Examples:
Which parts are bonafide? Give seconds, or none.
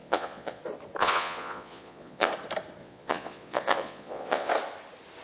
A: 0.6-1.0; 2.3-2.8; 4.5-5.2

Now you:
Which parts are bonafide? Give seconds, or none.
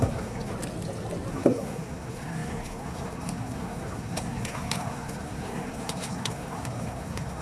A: 0.5-1.3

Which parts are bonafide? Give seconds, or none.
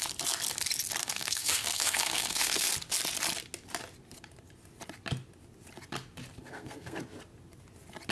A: 0.0-1.0; 2.7-6.4; 7.0-8.1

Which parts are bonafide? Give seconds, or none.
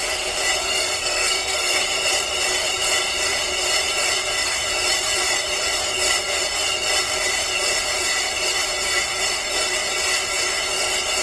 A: 0.0-0.6; 1.8-11.2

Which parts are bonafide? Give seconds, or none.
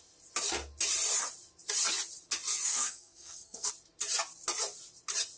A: 0.0-2.7; 3.7-5.4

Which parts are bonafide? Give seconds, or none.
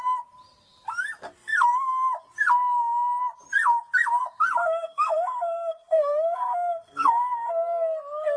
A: 0.0-4.6; 7.5-8.4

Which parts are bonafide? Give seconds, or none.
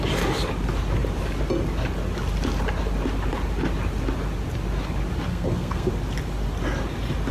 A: 0.0-5.3; 5.9-7.3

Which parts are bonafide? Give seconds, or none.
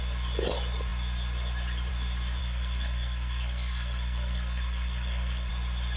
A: 0.0-2.4; 5.5-6.0